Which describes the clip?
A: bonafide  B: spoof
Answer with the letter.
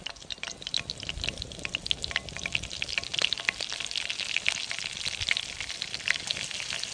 A